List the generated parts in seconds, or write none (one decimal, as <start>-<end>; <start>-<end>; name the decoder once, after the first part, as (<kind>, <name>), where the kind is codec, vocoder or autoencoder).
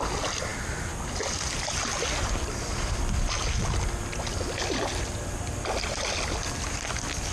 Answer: none